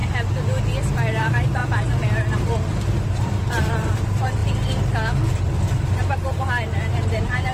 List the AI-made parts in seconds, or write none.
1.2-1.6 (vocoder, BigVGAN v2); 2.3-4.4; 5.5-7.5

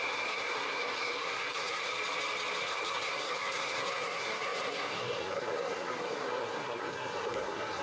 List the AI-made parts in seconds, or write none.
0.0-1.9 (codec, SNAC); 2.6-7.8

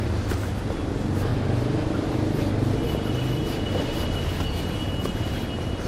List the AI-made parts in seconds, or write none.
none

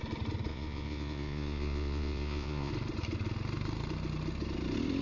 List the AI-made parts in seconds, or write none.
0.5-2.7 (vocoder, Vocos)

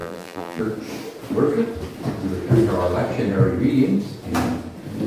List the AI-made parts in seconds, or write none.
0.0-0.6 (vocoder, BigVGAN v2)